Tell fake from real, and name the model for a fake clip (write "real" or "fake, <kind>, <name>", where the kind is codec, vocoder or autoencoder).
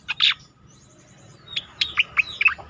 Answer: real